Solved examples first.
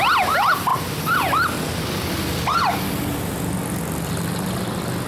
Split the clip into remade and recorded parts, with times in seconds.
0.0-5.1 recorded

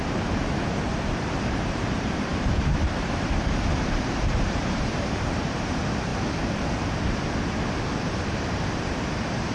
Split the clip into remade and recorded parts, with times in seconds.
0.0-6.1 remade; 6.1-7.9 recorded; 7.9-9.5 remade